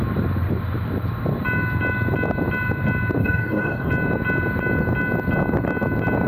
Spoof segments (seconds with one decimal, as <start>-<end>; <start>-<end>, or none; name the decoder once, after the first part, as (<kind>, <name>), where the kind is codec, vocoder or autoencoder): 3.2-3.9 (codec, DAC)